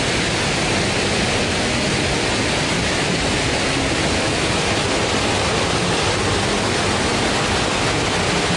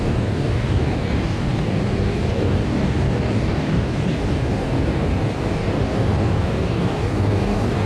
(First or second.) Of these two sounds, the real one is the first